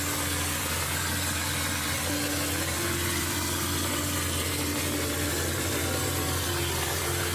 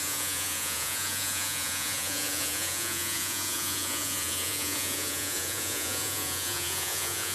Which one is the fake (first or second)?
second